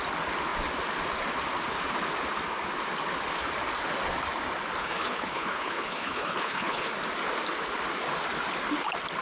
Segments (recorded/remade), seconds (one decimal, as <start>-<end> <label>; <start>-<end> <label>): 0.0-4.8 recorded; 4.8-6.9 remade; 6.9-9.2 recorded